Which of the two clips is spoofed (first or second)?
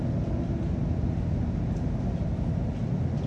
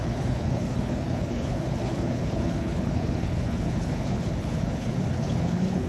second